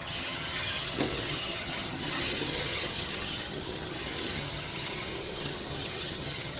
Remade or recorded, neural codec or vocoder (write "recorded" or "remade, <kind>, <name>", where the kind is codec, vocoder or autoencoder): remade, vocoder, HiFi-GAN